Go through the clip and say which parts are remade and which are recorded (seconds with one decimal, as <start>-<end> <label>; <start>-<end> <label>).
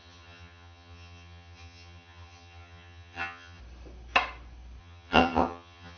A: 0.0-3.6 remade; 3.6-4.8 recorded; 4.8-6.0 remade